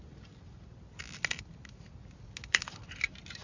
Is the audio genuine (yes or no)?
yes